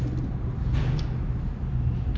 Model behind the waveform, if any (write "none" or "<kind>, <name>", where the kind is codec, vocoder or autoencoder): none